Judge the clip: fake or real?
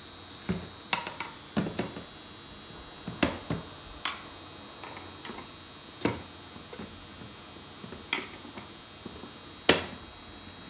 real